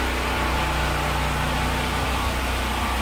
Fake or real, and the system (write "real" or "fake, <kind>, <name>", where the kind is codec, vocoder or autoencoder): real